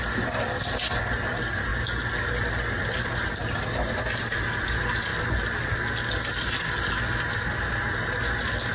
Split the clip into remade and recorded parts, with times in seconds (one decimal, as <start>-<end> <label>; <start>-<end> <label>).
0.0-8.7 recorded